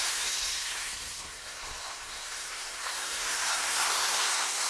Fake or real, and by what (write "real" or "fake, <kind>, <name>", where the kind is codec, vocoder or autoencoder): fake, codec, SNAC